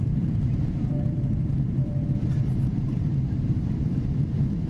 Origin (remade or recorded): remade